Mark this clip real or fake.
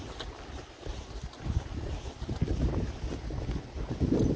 real